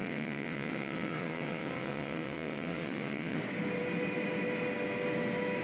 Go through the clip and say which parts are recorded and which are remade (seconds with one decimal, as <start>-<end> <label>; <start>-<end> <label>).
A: 0.0-3.4 remade; 3.4-5.6 recorded